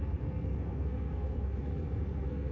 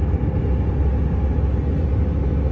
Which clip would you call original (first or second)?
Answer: second